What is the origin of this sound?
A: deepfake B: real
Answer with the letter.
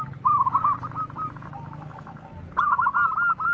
B